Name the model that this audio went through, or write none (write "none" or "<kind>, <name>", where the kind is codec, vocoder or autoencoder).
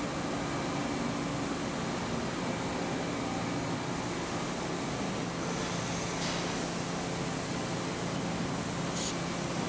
none